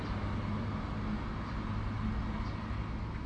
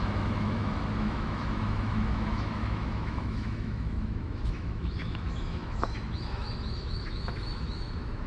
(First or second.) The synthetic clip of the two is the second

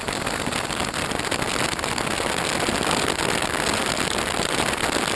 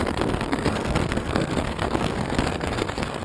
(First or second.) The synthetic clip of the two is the second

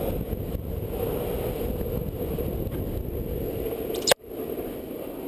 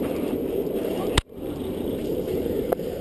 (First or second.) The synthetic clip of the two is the second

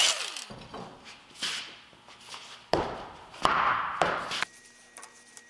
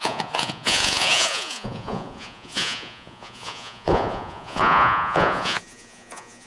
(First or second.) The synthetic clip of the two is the second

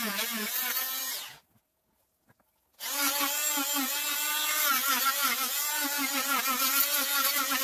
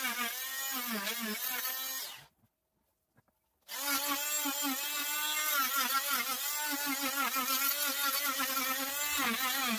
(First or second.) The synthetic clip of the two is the first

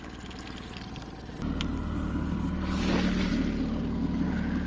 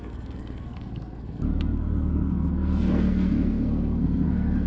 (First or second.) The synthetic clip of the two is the second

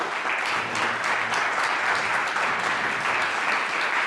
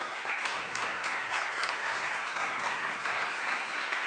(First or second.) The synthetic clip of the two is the second